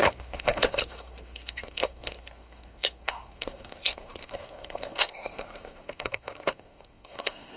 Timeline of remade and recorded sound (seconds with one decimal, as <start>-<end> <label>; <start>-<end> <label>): 0.0-7.6 remade